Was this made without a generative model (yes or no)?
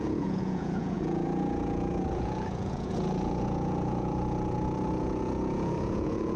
no